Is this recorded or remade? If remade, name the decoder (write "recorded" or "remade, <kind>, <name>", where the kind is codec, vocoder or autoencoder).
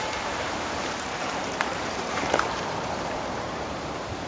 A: remade, vocoder, BigVGAN v2